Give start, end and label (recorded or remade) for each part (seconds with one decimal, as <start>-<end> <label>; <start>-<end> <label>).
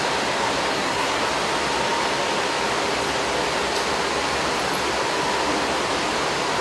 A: 0.0-0.7 recorded; 0.7-1.2 remade; 1.2-6.6 recorded